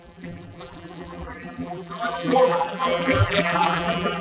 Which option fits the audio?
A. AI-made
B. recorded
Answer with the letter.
A